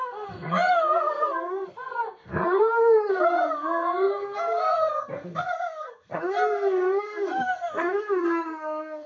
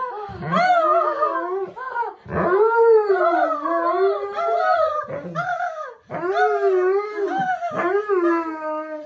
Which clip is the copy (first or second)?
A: first